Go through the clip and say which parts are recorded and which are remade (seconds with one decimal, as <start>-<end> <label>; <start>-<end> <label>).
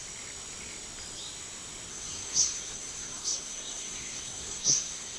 0.0-1.9 recorded; 1.9-5.2 remade